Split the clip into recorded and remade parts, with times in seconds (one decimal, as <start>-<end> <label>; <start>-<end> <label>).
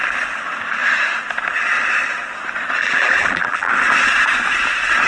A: 0.0-2.8 recorded; 2.8-3.7 remade; 3.7-5.1 recorded